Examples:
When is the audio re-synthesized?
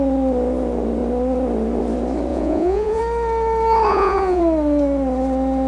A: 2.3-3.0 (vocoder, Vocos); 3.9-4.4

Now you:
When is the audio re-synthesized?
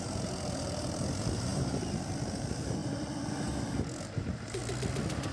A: 0.0-2.8 (vocoder, BigVGAN v2); 4.0-4.6